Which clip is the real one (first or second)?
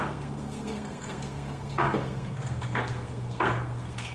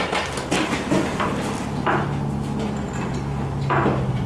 second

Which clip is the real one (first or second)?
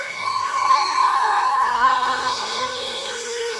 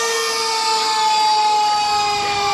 second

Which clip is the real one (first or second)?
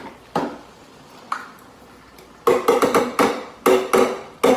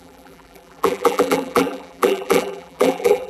first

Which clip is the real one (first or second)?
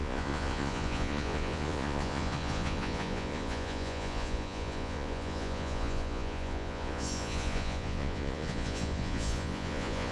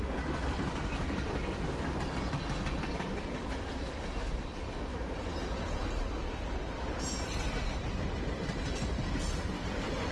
second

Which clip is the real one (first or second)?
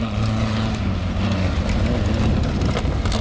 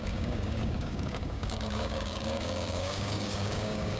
first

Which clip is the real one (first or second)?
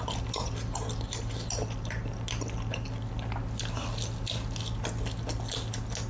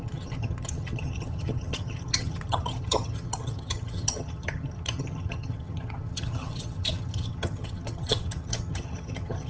first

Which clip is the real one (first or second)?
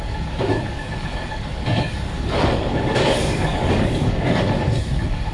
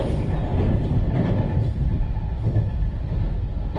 second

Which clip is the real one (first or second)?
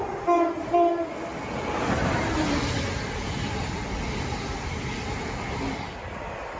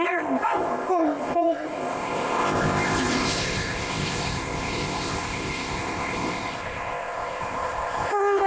first